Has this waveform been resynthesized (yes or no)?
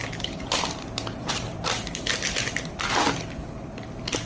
yes